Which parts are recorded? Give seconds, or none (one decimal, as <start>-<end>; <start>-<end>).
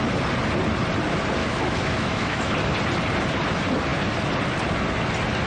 0.0-1.4; 2.5-5.5